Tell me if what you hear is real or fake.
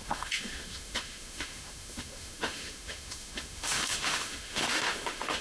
fake